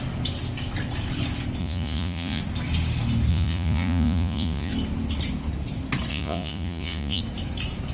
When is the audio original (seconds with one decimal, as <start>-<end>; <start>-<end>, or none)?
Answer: 0.0-1.6; 2.4-3.3; 4.7-6.1; 7.2-7.9